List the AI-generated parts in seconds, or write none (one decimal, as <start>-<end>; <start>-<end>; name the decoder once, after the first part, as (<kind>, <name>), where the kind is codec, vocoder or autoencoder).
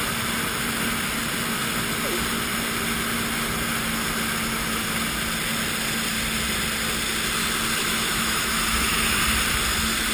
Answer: 7.8-9.2 (autoencoder, DAC-VAE)